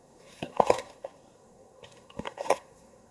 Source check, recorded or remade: remade